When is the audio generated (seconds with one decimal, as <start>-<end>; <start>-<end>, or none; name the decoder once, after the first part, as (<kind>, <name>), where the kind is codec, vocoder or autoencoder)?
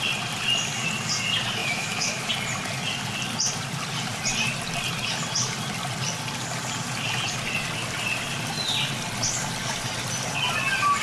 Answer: 1.6-2.3 (autoencoder, DAC-VAE)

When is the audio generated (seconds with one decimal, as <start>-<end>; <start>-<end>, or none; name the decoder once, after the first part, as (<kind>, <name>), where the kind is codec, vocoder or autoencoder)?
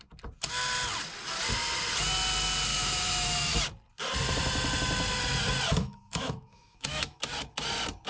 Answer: 2.7-3.5 (autoencoder, DAC-VAE); 5.7-7.2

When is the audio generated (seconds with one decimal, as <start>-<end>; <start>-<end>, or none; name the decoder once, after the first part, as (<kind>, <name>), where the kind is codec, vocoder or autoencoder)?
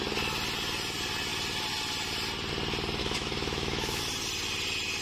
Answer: 3.0-4.0 (autoencoder, DAC-VAE)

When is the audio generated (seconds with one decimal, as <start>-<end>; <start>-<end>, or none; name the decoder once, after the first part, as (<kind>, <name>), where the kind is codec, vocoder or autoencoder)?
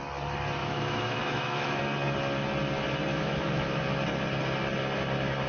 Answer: 0.6-1.8 (autoencoder, DAC-VAE); 3.1-4.0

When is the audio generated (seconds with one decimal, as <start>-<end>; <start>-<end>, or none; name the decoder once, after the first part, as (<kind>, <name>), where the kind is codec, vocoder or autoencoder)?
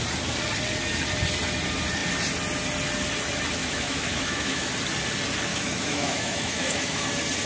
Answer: 3.6-4.7 (autoencoder, DAC-VAE); 5.5-7.1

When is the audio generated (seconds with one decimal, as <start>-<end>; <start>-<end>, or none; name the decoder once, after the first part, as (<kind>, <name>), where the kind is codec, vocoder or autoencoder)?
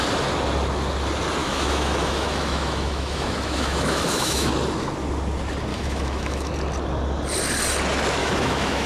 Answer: 1.4-4.5 (autoencoder, DAC-VAE); 5.7-6.5; 8.2-8.9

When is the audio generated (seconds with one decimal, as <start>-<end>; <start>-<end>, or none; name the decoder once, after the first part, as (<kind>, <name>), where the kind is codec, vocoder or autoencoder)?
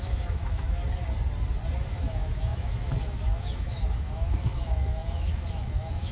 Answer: 0.0-0.8 (autoencoder, DAC-VAE); 1.9-6.1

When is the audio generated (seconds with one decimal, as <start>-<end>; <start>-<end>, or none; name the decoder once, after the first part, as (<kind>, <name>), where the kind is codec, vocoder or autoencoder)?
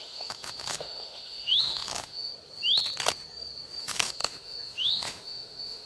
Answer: 0.0-2.3 (autoencoder, DAC-VAE); 3.8-5.9